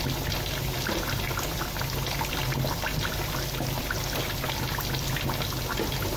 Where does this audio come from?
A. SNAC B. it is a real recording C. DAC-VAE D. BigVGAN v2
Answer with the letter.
B